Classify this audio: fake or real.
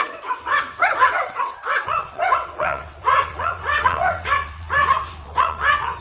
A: fake